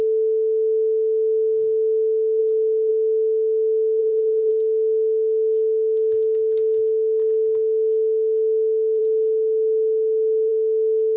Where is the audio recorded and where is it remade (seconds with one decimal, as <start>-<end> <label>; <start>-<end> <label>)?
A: 0.0-4.0 recorded; 4.0-4.5 remade; 4.5-11.2 recorded